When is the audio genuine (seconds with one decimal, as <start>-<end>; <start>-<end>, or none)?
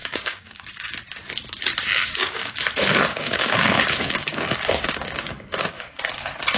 0.6-2.0; 2.6-3.1; 6.0-6.6